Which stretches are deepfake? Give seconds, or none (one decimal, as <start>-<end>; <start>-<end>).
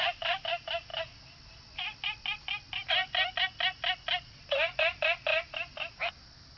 none